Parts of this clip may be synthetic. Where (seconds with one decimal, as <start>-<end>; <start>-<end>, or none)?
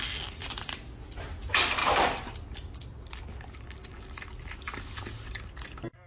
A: 1.8-2.3